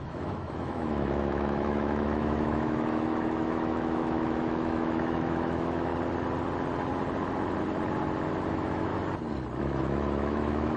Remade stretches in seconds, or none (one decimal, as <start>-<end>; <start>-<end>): 0.0-5.9; 8.5-8.9; 9.6-10.8